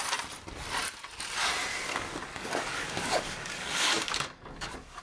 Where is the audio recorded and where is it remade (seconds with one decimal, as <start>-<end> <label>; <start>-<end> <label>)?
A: 0.0-1.7 recorded; 1.7-5.0 remade